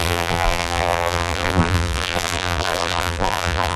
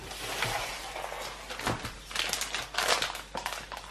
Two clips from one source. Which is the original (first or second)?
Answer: second